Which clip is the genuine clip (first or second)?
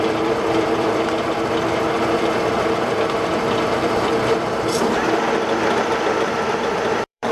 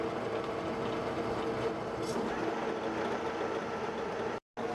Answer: second